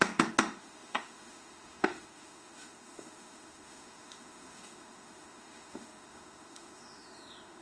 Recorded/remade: remade